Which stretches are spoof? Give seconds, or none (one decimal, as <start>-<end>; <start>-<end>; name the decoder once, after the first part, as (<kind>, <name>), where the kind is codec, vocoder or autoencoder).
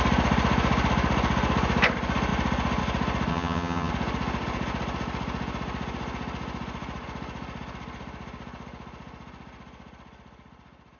3.3-3.9 (vocoder, HiFi-GAN)